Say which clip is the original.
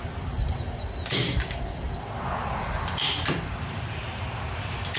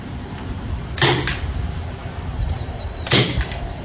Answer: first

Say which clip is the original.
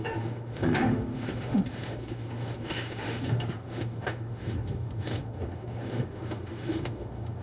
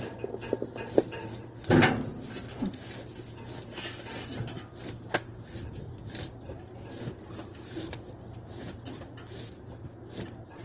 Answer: second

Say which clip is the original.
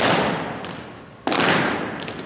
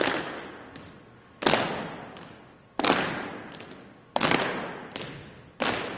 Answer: second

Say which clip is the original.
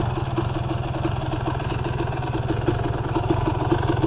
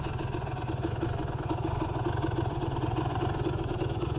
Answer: first